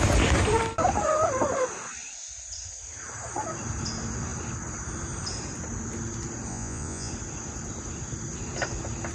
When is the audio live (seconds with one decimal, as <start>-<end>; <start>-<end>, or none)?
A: 0.0-6.5; 7.1-9.1